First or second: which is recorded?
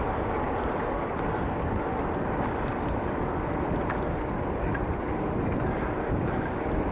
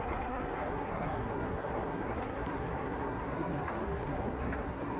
first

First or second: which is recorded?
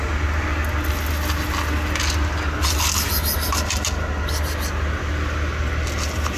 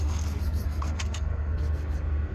first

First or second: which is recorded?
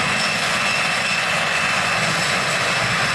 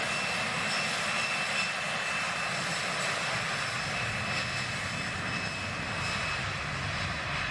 second